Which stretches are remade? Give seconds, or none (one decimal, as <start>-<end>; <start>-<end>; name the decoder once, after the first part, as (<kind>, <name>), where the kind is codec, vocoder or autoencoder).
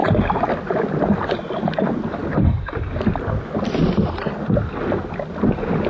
none